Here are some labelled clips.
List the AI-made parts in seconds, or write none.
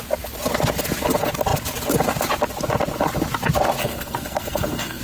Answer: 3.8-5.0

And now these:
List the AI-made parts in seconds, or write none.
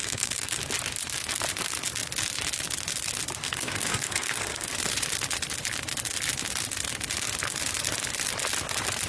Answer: 0.0-0.6; 3.4-4.7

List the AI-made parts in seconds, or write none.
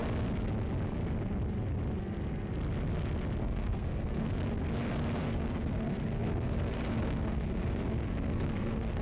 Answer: 3.4-4.3; 5.2-9.0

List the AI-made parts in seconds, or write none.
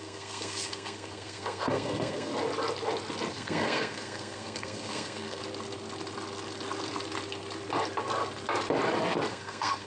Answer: 0.0-2.3; 3.3-5.4; 9.3-9.9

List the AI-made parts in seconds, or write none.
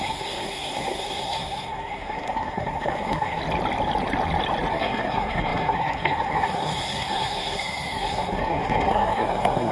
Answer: 0.0-3.4; 4.7-9.7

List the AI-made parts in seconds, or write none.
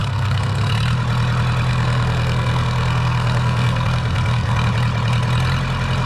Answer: 0.0-0.7; 1.7-4.7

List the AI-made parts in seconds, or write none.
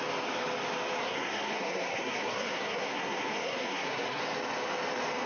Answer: 1.0-4.2